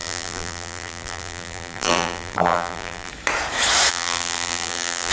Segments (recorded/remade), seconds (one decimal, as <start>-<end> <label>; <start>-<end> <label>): 0.0-3.1 remade; 3.1-3.9 recorded; 3.9-5.1 remade